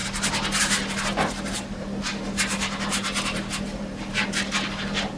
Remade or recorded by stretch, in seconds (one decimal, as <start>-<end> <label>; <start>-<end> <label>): 0.0-5.2 recorded